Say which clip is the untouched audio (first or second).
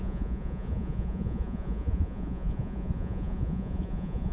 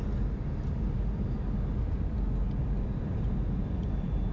second